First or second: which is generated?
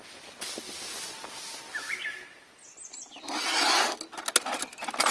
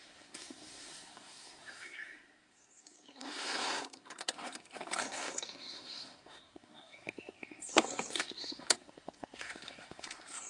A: second